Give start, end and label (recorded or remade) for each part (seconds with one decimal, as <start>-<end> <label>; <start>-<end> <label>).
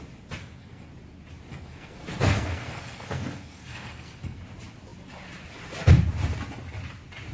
0.0-0.4 recorded; 0.4-0.9 remade; 0.9-1.5 recorded; 1.5-4.4 remade; 4.4-7.3 recorded